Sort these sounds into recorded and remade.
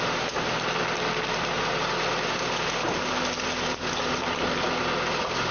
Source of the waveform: recorded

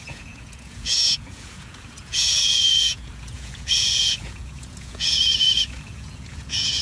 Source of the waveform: remade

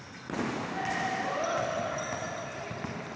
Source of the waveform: recorded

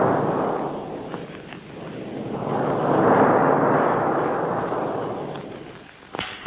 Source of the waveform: recorded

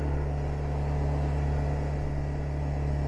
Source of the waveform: recorded